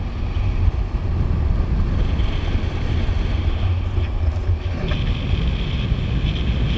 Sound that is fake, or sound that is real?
real